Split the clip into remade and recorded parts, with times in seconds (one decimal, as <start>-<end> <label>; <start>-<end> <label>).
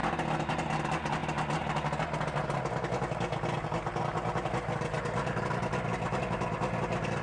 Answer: 0.0-7.2 recorded